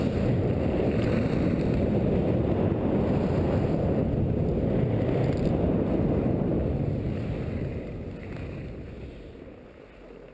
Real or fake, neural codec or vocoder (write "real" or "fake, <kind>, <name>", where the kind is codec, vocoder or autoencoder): real